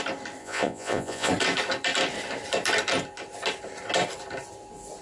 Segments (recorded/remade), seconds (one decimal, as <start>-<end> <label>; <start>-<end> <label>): 0.0-0.4 recorded; 0.4-1.3 remade; 1.3-5.0 recorded